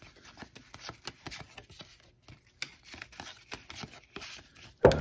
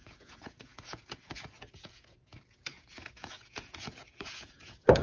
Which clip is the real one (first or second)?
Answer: first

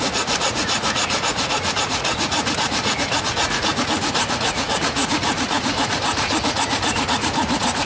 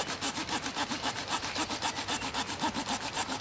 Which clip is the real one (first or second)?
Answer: second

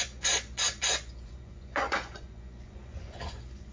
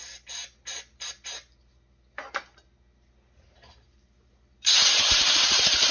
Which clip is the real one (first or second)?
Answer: second